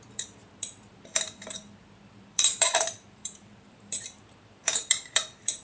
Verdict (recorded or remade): remade